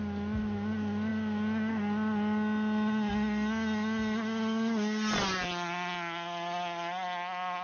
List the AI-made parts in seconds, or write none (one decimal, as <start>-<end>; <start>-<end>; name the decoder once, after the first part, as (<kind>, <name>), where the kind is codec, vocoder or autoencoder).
none